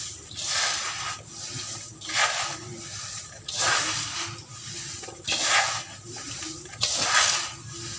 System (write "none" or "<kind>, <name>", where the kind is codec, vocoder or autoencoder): none